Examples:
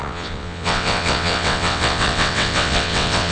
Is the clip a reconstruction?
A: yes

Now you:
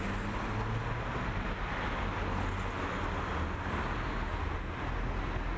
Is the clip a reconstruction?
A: no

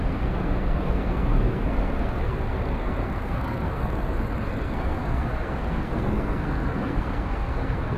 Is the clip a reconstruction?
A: yes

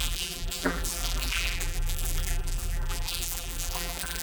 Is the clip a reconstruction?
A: yes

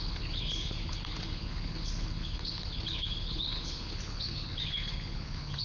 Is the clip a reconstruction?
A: yes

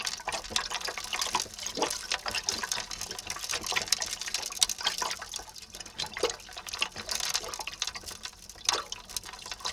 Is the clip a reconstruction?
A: no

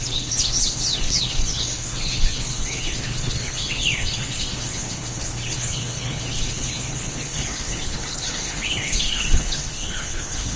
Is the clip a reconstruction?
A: yes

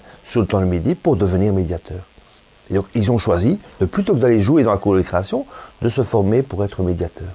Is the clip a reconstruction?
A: no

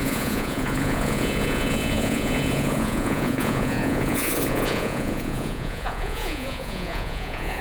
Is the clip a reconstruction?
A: yes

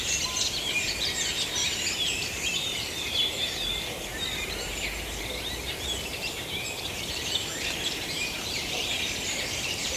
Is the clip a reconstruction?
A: yes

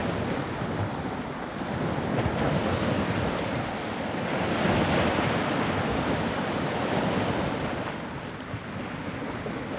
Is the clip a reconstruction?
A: no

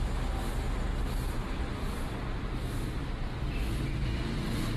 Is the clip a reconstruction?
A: no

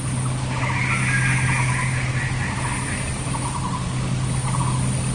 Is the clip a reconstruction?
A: no